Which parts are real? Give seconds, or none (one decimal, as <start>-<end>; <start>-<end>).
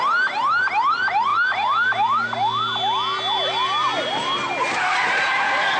0.0-5.8